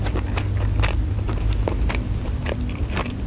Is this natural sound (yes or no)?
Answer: yes